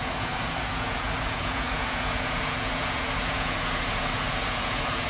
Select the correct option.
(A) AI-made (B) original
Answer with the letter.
A